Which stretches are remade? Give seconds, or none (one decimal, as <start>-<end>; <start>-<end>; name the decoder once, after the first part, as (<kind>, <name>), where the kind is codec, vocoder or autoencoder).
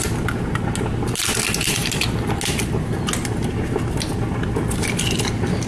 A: none